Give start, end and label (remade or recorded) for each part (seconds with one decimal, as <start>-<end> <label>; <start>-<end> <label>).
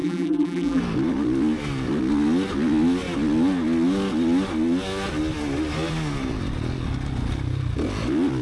0.0-0.8 remade; 0.8-8.4 recorded